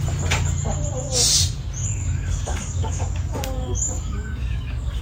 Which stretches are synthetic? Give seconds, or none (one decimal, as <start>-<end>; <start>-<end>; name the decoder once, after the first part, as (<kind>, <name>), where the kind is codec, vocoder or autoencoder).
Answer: 1.8-5.0 (codec, DAC)